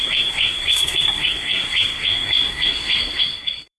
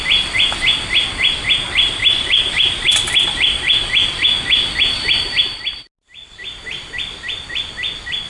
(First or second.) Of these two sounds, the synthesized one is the first